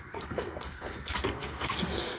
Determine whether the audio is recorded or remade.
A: remade